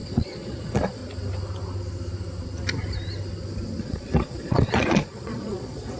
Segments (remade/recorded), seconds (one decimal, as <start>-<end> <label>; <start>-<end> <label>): 0.0-1.0 remade; 1.0-3.8 recorded; 3.8-6.0 remade